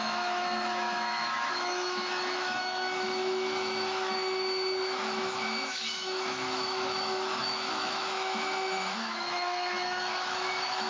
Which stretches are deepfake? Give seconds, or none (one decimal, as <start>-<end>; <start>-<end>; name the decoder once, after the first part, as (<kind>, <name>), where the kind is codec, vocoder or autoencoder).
0.0-10.9 (autoencoder, DAC-VAE)